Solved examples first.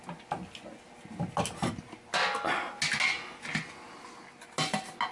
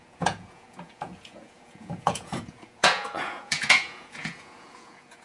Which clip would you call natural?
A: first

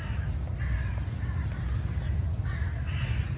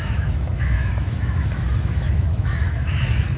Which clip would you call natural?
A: first